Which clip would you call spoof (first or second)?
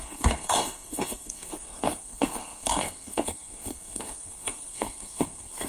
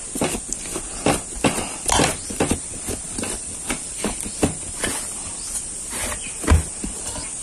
first